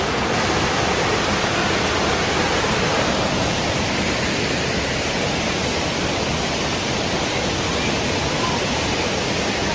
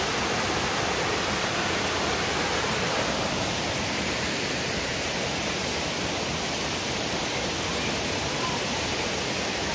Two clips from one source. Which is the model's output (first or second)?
second